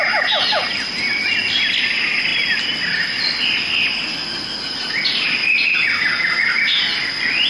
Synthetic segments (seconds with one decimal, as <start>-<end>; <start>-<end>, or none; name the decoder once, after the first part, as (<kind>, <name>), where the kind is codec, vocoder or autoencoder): 2.3-3.9 (vocoder, BigVGAN v2)